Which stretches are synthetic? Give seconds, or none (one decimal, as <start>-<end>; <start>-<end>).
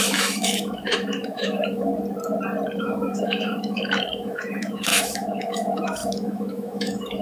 0.0-1.9; 2.8-7.2